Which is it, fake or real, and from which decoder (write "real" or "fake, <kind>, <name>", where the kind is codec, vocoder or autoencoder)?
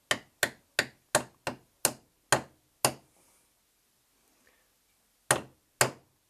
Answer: real